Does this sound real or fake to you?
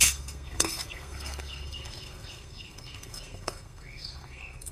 fake